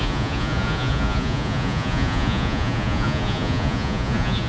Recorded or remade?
remade